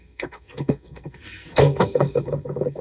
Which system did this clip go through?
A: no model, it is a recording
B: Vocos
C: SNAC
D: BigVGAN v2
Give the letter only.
C